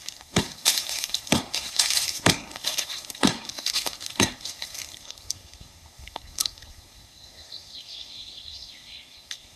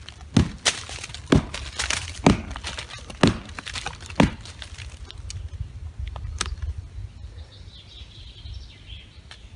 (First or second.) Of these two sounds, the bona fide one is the second